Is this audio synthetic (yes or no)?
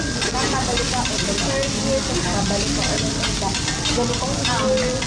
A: no